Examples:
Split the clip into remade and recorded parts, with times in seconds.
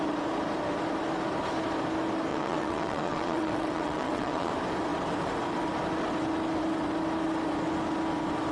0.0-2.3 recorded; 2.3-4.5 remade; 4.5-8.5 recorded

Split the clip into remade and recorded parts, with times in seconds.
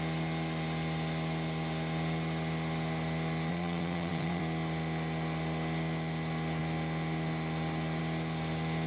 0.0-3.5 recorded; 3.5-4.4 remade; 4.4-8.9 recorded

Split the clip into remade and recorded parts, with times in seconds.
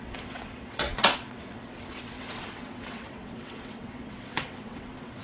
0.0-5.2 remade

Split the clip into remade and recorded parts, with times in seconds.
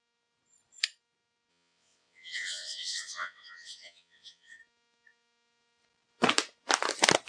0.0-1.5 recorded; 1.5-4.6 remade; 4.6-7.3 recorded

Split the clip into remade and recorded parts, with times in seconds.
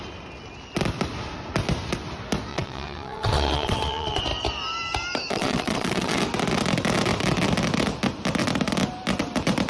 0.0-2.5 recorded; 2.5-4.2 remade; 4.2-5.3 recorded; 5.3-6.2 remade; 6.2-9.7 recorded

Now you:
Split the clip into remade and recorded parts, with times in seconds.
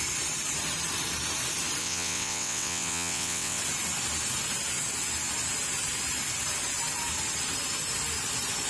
0.0-1.8 recorded; 1.8-3.6 remade; 3.6-8.7 recorded